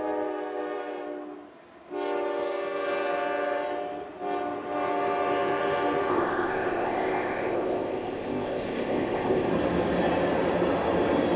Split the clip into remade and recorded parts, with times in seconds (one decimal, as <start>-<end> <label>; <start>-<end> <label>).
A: 0.0-6.1 recorded; 6.1-9.5 remade; 9.5-11.4 recorded